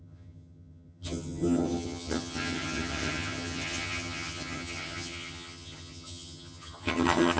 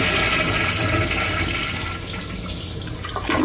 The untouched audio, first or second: second